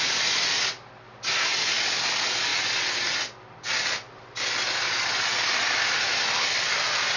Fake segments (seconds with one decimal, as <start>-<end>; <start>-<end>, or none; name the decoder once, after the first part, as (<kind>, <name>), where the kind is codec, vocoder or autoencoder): none